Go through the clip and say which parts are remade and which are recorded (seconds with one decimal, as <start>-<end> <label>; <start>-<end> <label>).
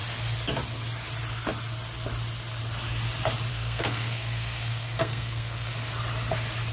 0.0-3.5 recorded; 3.5-5.7 remade; 5.7-6.7 recorded